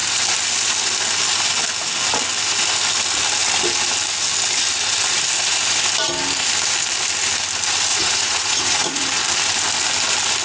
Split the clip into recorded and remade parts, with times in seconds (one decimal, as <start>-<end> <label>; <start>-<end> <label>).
0.0-7.9 recorded; 7.9-9.1 remade; 9.1-10.4 recorded